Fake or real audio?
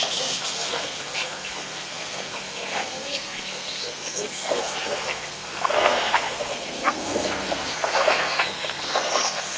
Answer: fake